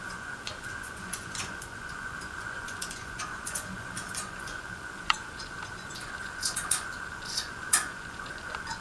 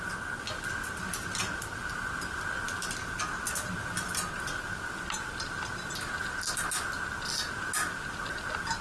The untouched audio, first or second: second